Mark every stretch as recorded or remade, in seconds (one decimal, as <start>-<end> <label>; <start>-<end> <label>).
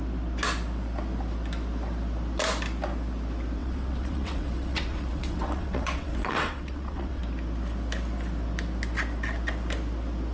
0.0-3.6 recorded; 3.6-7.2 remade; 7.2-10.3 recorded